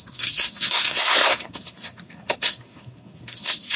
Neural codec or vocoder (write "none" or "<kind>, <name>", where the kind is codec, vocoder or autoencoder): codec, SNAC